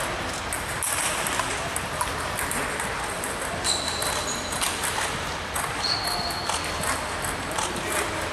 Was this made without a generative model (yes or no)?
yes